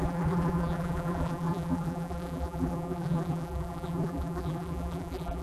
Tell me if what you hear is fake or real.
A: fake